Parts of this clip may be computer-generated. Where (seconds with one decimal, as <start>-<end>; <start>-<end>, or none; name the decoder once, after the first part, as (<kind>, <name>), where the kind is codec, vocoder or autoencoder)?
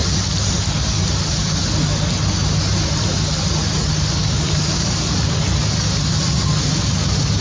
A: none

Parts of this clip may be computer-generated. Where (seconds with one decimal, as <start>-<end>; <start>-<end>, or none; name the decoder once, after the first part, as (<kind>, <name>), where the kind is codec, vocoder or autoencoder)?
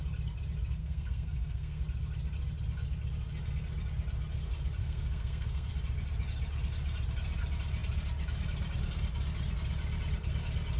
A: 0.8-1.8 (codec, SNAC); 4.8-5.7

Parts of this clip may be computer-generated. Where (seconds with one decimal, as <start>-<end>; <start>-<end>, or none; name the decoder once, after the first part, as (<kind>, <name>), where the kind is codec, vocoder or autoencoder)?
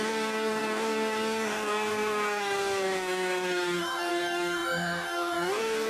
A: 0.0-5.9 (codec, DAC)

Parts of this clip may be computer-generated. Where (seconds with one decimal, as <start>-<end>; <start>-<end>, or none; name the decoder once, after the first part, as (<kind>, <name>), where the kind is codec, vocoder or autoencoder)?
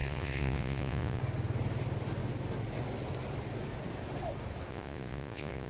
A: 0.0-1.2 (vocoder, Vocos); 4.7-5.7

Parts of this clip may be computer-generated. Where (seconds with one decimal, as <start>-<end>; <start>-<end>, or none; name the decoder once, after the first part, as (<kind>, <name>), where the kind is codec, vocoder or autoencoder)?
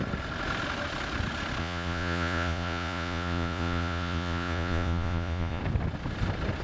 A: 1.6-5.6 (vocoder, Vocos)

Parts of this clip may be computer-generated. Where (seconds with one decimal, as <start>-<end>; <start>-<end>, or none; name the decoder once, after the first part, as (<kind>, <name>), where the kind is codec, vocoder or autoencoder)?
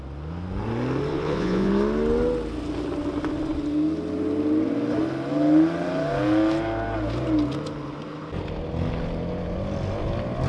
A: 1.1-1.7 (vocoder, Vocos)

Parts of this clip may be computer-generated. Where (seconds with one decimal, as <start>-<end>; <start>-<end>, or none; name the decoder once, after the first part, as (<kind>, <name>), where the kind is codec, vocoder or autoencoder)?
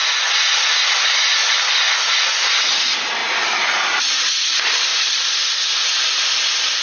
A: 4.9-5.7 (vocoder, Vocos)